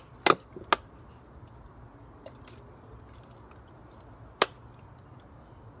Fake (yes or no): no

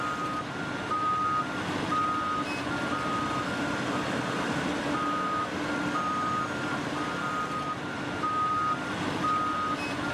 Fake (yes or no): no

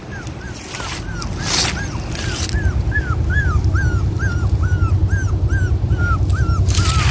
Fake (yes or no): no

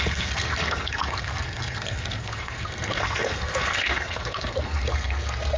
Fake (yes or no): yes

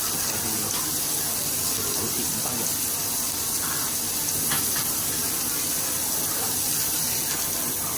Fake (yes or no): no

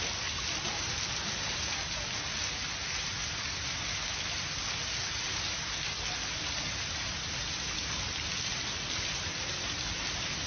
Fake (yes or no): no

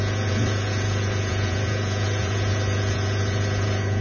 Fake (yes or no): yes